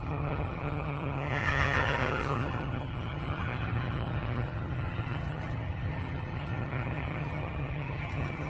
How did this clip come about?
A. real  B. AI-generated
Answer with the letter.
B